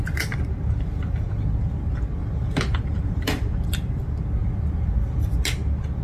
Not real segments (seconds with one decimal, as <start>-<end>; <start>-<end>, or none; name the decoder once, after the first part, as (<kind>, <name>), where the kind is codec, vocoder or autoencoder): 2.2-4.0 (vocoder, BigVGAN v2)